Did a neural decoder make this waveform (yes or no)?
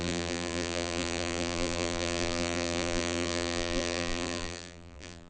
yes